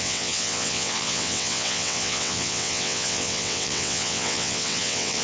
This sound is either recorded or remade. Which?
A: remade